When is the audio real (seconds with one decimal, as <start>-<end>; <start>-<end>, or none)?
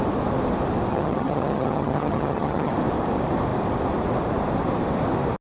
0.0-0.9; 2.7-5.4